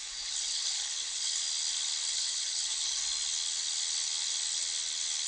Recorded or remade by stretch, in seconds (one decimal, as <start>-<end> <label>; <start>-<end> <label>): 0.0-1.4 remade; 1.4-2.1 recorded; 2.1-3.0 remade; 3.0-5.3 recorded